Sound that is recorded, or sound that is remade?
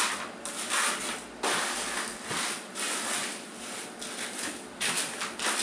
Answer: recorded